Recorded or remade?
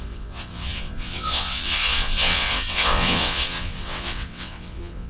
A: remade